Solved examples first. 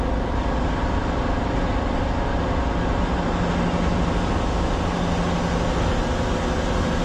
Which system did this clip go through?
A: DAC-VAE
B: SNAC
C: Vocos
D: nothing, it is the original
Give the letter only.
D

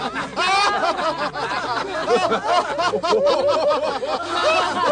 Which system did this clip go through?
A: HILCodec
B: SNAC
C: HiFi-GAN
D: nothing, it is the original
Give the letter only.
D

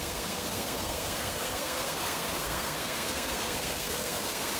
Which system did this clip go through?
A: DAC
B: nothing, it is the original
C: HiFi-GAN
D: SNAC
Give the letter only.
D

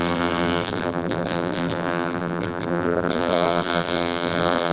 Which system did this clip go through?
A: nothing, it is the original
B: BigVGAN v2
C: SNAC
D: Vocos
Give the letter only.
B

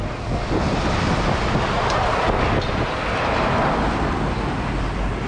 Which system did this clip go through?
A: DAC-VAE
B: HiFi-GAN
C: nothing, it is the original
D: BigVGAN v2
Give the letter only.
C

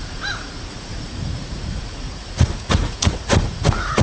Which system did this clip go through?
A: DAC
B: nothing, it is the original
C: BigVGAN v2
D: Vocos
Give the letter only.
D